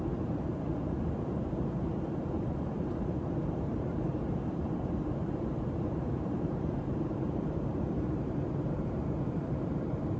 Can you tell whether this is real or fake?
fake